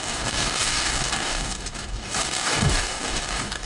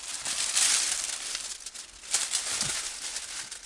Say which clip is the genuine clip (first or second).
second